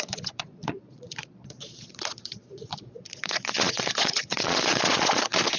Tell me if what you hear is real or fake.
fake